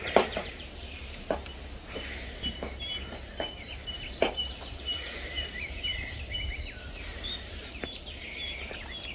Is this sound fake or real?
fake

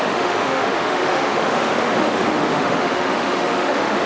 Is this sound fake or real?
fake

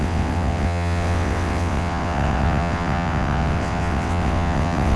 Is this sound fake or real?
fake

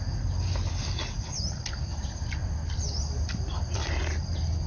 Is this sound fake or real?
real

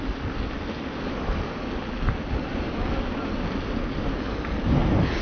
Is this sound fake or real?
real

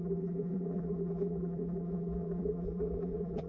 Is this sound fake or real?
fake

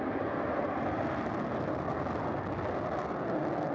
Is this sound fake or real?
real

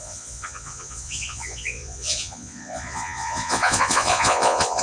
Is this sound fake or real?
fake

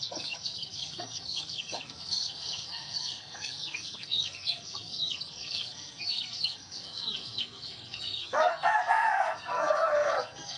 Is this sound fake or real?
fake